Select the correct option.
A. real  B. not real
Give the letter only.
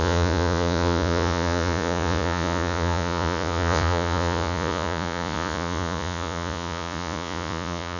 B